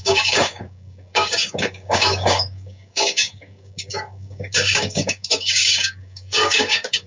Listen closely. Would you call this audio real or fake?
fake